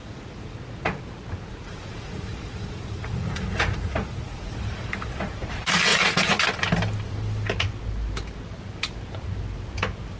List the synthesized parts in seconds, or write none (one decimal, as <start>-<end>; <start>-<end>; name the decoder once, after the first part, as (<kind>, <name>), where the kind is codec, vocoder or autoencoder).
0.0-1.0 (vocoder, Vocos); 1.5-4.7; 5.9-6.4